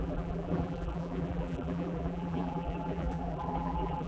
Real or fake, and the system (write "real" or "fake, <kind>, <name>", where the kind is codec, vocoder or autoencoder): fake, vocoder, BigVGAN v2